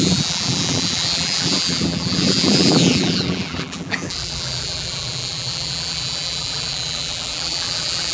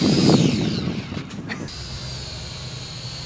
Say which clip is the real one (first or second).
second